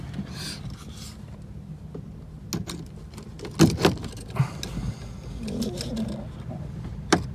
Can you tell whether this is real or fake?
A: real